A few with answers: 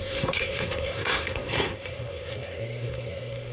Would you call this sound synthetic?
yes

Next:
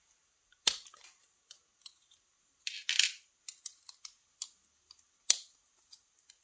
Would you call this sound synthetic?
no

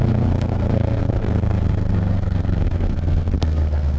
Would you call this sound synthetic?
yes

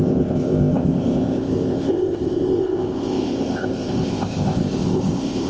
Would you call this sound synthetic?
yes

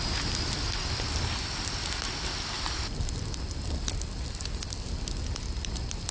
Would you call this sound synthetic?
no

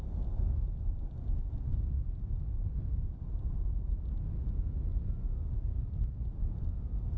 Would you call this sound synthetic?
no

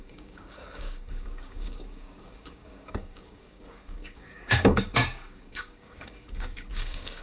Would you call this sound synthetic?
yes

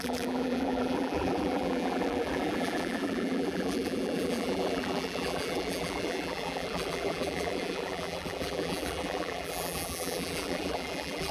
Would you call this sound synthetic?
yes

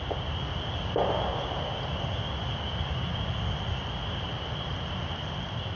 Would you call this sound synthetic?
no